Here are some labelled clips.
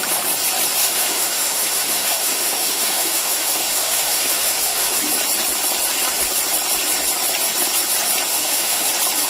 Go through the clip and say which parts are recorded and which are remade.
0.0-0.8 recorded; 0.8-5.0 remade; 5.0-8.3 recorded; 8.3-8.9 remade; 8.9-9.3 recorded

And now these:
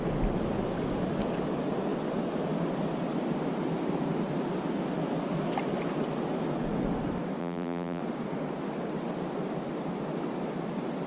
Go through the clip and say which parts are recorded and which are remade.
0.0-7.4 recorded; 7.4-8.0 remade; 8.0-11.1 recorded

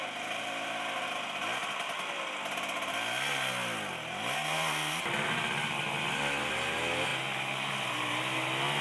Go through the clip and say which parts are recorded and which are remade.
0.0-8.8 recorded